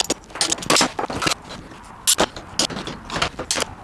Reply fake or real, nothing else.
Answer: real